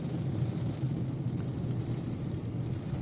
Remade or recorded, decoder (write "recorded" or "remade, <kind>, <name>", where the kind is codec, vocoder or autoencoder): recorded